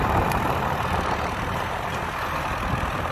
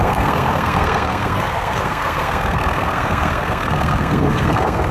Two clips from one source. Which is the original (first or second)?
first